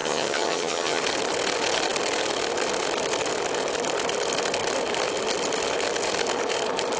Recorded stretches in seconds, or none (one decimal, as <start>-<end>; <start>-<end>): 1.0-7.0